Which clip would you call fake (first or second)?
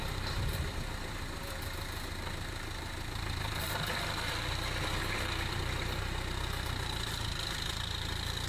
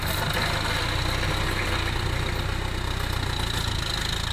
first